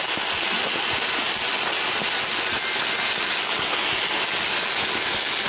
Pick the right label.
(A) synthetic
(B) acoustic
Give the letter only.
B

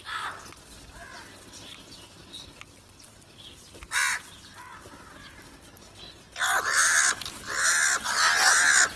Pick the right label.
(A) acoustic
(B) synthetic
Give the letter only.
A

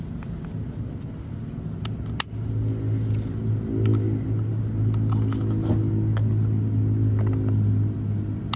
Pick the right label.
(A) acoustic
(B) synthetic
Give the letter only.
A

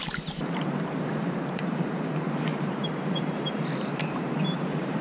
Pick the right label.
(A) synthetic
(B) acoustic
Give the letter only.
A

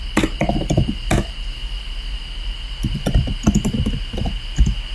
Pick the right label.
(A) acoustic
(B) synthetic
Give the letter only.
A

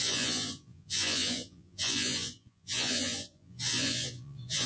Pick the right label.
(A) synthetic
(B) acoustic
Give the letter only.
A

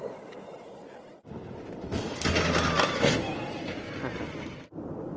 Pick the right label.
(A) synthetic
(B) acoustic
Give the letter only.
B